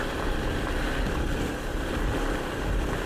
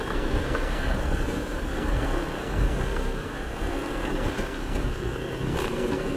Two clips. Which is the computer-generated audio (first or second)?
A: second